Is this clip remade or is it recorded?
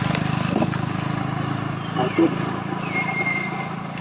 recorded